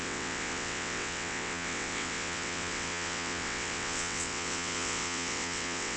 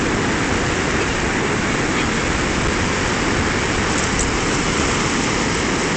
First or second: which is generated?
first